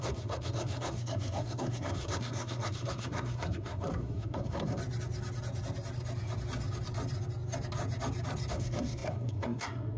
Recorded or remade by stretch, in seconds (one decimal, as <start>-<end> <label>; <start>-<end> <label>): 0.0-4.8 remade; 4.8-8.5 recorded; 8.5-10.0 remade